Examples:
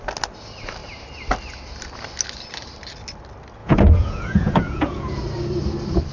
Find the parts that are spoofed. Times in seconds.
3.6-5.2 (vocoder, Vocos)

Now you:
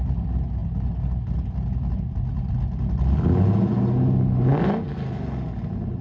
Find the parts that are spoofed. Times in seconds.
none

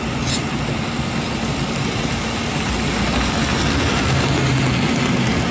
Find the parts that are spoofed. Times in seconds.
none

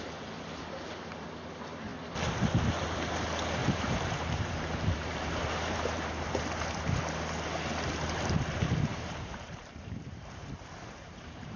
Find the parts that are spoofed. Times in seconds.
3.6-6.3 (vocoder, BigVGAN v2); 8.9-11.6

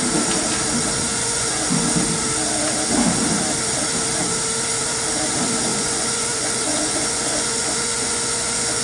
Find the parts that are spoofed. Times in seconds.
1.1-1.9 (vocoder, Vocos); 5.7-8.8

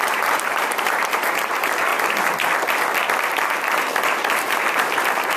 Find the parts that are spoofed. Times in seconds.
0.0-1.9 (vocoder, BigVGAN v2); 4.5-5.4

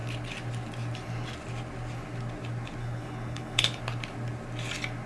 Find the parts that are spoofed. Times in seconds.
2.8-3.8 (codec, HILCodec)

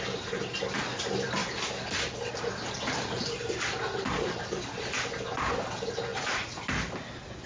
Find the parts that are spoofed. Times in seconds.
6.1-6.6 (vocoder, Vocos)